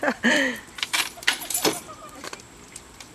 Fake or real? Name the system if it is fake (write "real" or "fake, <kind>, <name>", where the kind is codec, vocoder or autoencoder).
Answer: fake, vocoder, BigVGAN v2